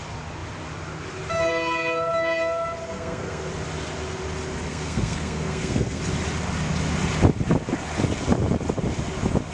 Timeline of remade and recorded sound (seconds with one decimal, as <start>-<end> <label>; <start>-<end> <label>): 0.0-2.8 recorded; 2.8-3.5 remade; 3.5-4.7 recorded; 4.7-6.0 remade; 6.0-9.5 recorded